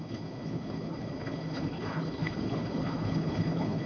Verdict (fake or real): fake